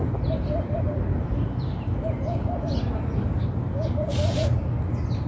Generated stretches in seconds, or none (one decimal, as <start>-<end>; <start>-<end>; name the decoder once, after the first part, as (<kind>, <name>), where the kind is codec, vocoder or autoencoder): none